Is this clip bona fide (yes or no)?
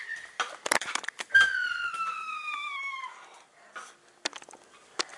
yes